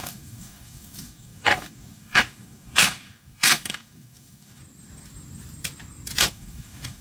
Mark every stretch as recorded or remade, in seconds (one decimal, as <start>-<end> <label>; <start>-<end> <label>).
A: 0.0-4.6 remade; 4.6-6.3 recorded; 6.3-7.0 remade